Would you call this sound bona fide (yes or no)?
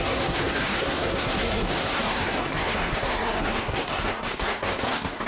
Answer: no